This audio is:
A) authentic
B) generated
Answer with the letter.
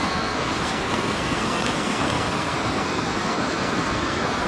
B